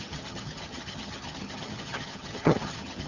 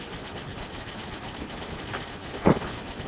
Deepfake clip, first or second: first